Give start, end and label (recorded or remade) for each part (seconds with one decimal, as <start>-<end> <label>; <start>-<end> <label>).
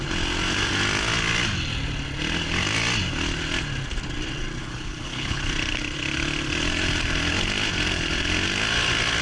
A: 0.0-4.6 recorded; 4.6-5.4 remade; 5.4-9.2 recorded